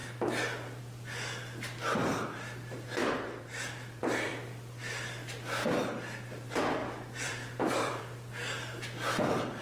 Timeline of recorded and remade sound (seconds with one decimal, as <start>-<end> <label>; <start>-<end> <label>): 0.0-3.0 recorded; 3.0-4.3 remade; 4.3-6.8 recorded; 6.8-8.0 remade; 8.0-9.6 recorded